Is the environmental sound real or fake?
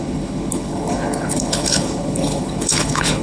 fake